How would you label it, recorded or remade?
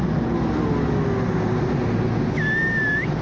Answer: recorded